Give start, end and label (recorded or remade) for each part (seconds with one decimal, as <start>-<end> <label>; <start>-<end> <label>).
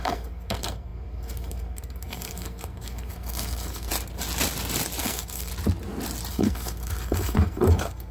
0.0-3.9 remade; 3.9-5.0 recorded; 5.0-5.5 remade; 5.5-6.3 recorded; 6.3-8.1 remade